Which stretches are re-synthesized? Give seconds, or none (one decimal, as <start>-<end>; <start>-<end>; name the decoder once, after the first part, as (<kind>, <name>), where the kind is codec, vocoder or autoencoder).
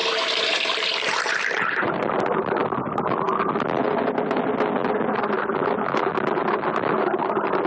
0.0-2.0 (vocoder, BigVGAN v2)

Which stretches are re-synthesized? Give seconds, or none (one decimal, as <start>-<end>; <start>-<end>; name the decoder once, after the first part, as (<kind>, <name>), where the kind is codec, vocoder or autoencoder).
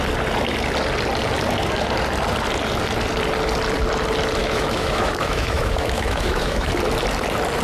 4.4-6.7 (autoencoder, DAC-VAE)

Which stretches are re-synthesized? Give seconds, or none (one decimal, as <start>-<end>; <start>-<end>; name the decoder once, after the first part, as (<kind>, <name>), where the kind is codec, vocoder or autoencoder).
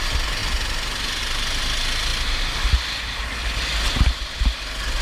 none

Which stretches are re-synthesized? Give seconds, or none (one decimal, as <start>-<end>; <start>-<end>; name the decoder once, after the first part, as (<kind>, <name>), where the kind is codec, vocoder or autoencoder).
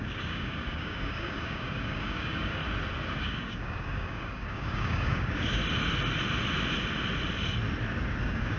0.0-2.6 (codec, DAC); 3.2-5.6; 8.2-8.6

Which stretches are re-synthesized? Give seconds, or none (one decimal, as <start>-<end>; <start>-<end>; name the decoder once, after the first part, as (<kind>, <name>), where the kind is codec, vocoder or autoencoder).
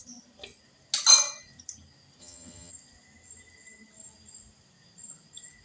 2.2-2.7 (vocoder, HiFi-GAN)